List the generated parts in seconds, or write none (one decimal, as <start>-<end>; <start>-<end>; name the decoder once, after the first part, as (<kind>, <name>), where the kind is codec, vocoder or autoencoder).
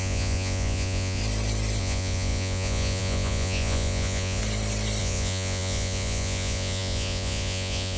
0.0-1.2 (vocoder, Vocos); 1.8-4.4; 5.0-8.0